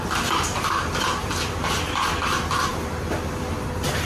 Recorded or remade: recorded